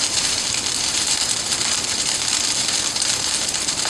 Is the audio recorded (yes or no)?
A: no